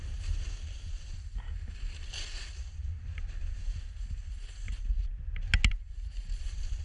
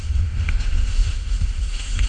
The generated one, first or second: second